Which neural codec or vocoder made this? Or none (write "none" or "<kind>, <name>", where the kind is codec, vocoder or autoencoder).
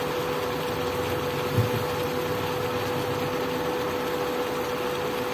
none